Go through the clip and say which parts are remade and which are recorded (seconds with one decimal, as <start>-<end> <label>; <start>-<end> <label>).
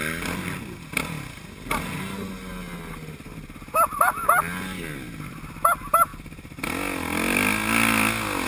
0.0-8.5 recorded